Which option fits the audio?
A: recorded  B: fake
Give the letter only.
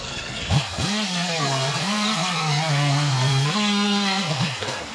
B